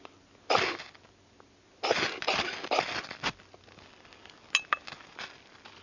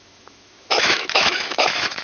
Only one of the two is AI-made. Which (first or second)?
second